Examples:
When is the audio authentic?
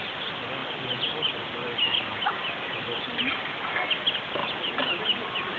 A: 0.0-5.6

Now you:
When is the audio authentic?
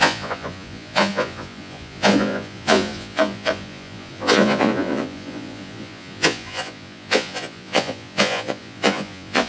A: none